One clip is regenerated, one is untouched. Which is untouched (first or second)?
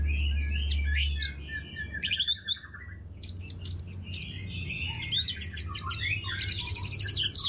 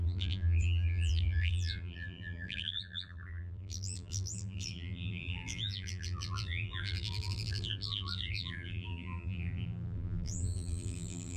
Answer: first